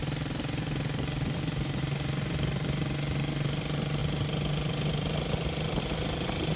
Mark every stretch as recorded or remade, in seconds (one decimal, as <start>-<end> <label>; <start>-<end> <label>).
0.0-6.6 recorded